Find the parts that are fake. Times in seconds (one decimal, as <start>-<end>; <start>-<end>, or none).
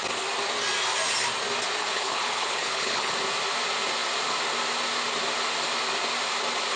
1.8-3.1